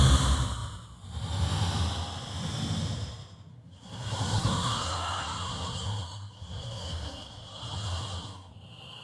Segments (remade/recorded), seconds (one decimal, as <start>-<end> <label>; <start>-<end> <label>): 0.0-3.5 recorded; 3.5-8.5 remade; 8.5-9.0 recorded